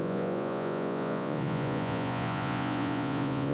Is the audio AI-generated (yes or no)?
yes